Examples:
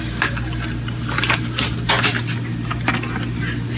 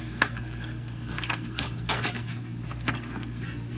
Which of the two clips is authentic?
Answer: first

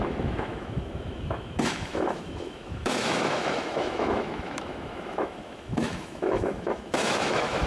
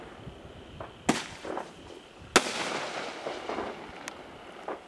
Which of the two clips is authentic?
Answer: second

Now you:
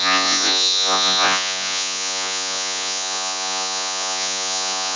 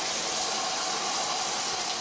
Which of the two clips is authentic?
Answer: second